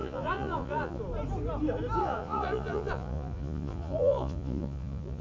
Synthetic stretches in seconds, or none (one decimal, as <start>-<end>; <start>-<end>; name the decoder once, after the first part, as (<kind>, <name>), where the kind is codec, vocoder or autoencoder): 0.0-1.0 (vocoder, Vocos); 2.0-5.2